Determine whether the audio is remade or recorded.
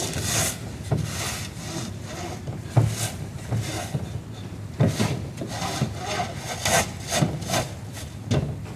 recorded